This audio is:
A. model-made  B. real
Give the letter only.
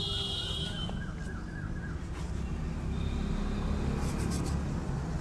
B